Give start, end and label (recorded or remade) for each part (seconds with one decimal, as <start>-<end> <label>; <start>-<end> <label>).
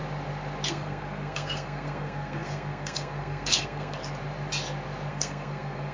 0.0-0.7 recorded; 0.7-4.0 remade; 4.0-5.1 recorded; 5.1-5.9 remade